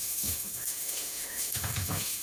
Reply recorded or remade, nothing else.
remade